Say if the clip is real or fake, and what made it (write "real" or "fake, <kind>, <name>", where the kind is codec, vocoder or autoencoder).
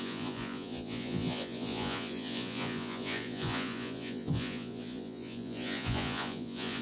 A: fake, vocoder, Vocos